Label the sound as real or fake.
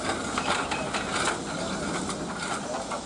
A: real